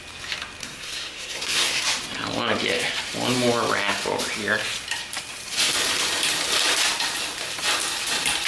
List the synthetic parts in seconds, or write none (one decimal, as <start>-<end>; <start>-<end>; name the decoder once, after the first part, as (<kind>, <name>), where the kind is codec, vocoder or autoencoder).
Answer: 0.6-1.8 (codec, SNAC)